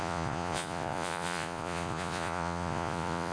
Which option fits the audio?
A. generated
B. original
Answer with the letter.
A